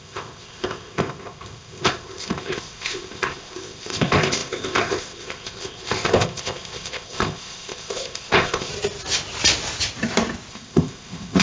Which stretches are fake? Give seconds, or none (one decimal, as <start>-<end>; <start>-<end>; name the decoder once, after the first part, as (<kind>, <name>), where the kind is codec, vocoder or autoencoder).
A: 0.0-8.7 (codec, ZipCodec); 10.5-11.4